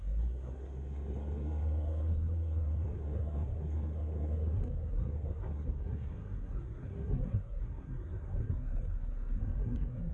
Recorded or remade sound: remade